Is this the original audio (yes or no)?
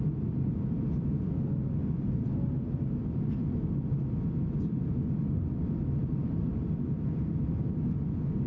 yes